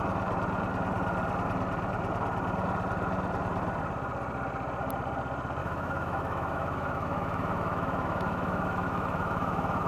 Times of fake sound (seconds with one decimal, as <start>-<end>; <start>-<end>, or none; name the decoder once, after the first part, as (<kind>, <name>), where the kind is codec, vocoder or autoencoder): 5.6-9.9 (autoencoder, DAC-VAE)